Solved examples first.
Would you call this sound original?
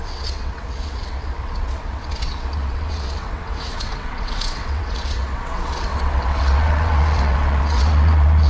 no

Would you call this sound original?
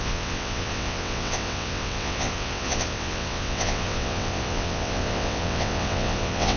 no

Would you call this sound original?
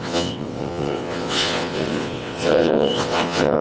no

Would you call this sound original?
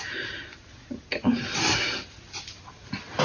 yes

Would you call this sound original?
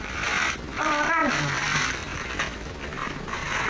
yes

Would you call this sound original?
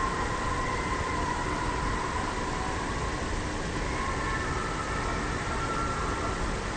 yes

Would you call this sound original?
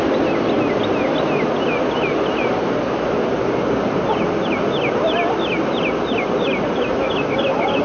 yes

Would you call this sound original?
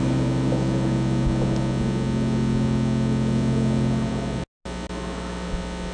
yes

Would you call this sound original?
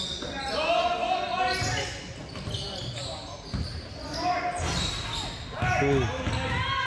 yes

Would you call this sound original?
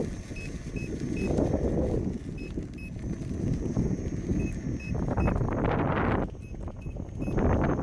yes